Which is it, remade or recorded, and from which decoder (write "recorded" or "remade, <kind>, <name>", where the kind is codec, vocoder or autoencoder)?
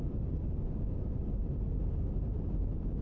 recorded